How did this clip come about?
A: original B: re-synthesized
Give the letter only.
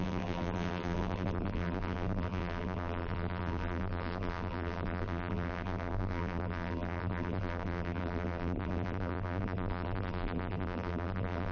B